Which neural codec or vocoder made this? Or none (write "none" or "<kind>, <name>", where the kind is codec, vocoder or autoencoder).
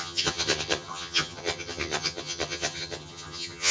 vocoder, HiFi-GAN